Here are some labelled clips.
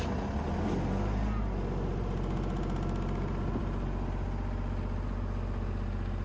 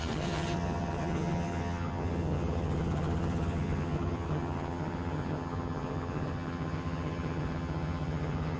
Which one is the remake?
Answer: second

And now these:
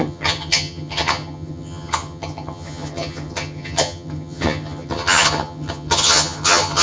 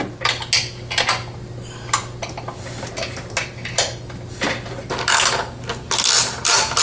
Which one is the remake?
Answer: first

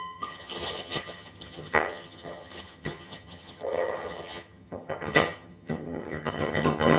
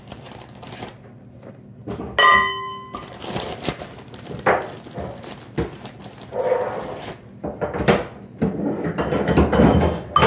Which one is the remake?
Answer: first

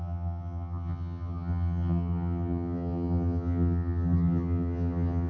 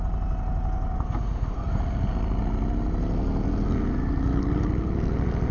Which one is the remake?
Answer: first